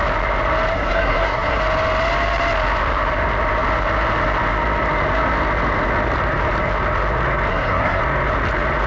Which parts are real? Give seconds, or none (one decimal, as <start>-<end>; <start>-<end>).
0.0-0.7; 1.6-7.5; 8.0-8.9